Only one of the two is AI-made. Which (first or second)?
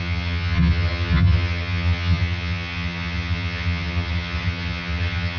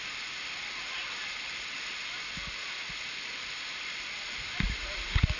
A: first